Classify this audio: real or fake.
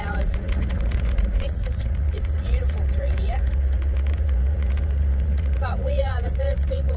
fake